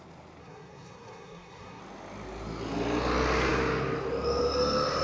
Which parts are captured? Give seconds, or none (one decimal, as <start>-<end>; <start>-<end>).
0.0-0.4; 1.8-5.0